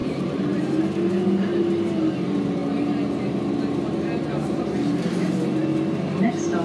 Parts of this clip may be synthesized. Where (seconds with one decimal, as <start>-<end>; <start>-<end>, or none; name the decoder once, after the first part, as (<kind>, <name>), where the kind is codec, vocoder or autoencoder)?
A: 0.0-0.5 (vocoder, BigVGAN v2)